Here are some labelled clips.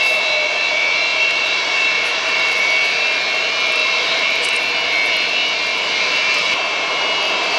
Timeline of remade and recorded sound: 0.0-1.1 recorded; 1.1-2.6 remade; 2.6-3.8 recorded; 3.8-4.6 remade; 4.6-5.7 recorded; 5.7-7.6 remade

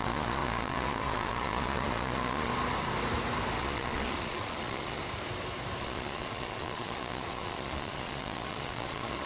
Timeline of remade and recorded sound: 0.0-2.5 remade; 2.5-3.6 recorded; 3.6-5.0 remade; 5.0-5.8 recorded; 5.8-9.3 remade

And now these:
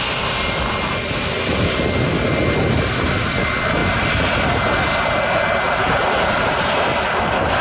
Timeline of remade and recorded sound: 0.0-7.6 recorded

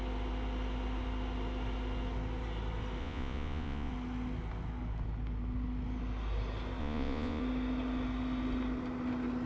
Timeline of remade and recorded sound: 0.0-3.0 recorded; 3.0-3.9 remade; 3.9-6.8 recorded; 6.8-7.4 remade; 7.4-9.5 recorded